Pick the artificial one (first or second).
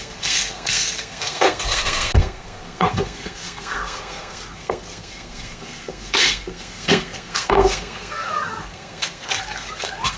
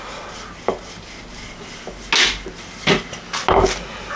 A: first